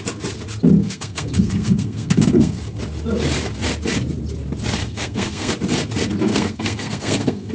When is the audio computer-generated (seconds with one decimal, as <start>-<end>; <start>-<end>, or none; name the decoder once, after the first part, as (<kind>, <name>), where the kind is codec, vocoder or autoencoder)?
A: 0.8-2.8 (codec, SNAC); 4.8-5.5; 6.3-7.5